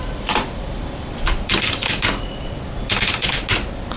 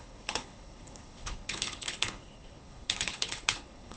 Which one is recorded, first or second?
first